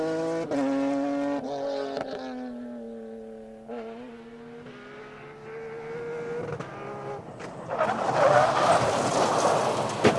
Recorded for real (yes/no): yes